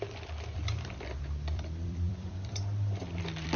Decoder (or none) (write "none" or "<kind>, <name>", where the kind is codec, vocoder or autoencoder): vocoder, BigVGAN v2